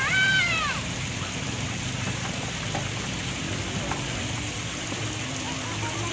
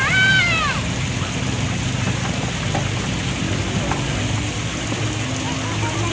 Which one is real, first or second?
second